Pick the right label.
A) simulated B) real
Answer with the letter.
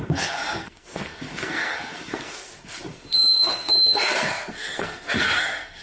A